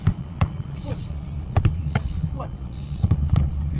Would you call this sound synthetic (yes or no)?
yes